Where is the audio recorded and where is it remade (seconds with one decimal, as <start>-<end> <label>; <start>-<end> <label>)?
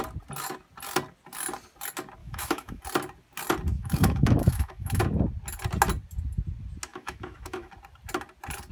0.0-2.2 recorded; 2.2-2.8 remade; 2.8-3.7 recorded; 3.7-5.0 remade; 5.0-6.9 recorded; 6.9-7.7 remade; 7.7-8.7 recorded